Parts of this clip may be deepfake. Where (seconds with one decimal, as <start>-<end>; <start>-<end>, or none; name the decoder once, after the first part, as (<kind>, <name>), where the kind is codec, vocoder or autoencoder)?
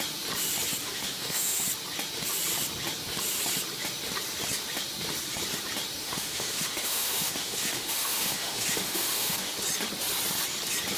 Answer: 0.8-1.6 (autoencoder, DAC-VAE); 6.0-9.5